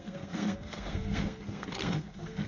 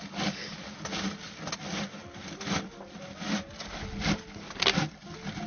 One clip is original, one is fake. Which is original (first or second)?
second